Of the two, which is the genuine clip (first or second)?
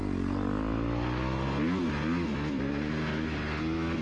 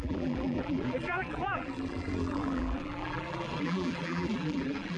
first